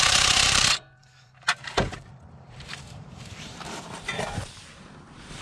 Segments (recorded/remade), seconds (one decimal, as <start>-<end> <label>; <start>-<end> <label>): 0.0-5.4 remade